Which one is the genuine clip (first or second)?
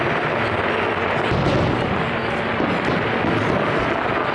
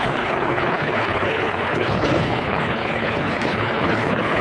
first